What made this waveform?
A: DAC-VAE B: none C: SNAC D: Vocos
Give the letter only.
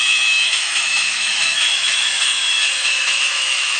A